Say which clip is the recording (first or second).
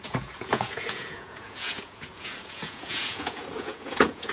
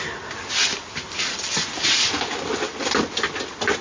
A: second